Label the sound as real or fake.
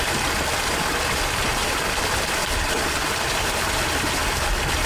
fake